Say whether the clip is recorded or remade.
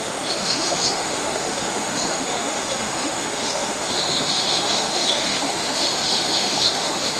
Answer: remade